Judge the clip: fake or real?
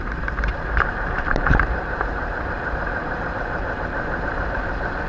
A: fake